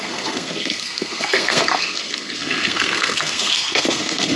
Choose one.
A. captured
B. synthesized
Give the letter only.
B